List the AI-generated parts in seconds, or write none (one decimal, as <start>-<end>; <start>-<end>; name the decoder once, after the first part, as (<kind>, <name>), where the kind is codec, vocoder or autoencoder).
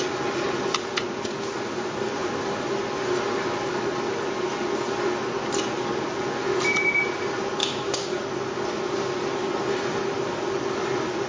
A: 7.6-8.2 (codec, DAC)